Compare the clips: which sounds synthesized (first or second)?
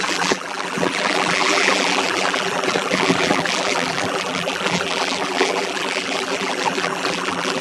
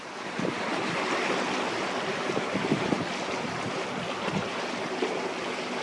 first